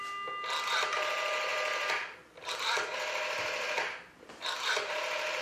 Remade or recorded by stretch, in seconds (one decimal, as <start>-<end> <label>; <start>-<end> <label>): 0.0-1.5 recorded; 1.5-4.7 remade; 4.7-5.4 recorded